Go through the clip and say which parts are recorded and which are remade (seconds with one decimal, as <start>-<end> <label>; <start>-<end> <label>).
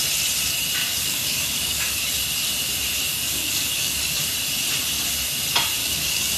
0.0-0.8 recorded; 0.8-2.1 remade; 2.1-3.1 recorded; 3.1-4.2 remade; 4.2-5.8 recorded; 5.8-6.4 remade